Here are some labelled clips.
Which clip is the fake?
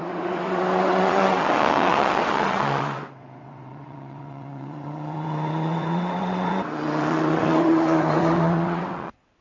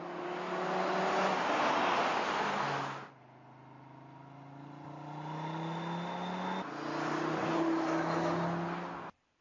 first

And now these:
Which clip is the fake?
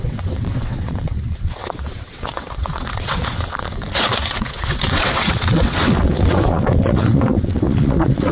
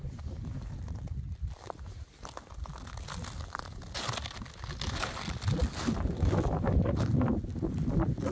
first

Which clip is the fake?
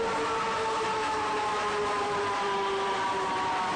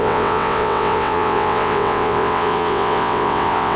second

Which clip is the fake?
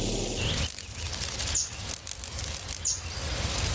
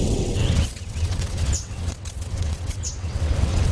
second